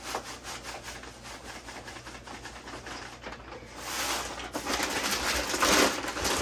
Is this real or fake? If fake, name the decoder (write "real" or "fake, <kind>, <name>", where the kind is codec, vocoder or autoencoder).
real